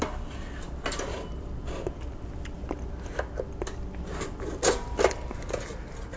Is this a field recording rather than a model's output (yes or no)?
yes